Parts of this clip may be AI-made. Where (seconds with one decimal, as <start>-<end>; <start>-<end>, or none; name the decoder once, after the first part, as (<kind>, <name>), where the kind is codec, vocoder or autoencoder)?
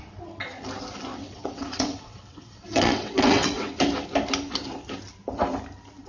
1.1-3.8 (vocoder, WaveNeXt)